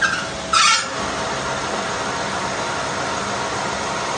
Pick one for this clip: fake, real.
real